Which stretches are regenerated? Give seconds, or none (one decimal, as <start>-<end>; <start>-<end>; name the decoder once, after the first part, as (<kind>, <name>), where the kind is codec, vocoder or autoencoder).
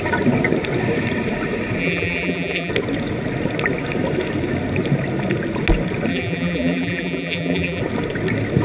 1.8-2.7 (vocoder, BigVGAN v2); 6.1-7.8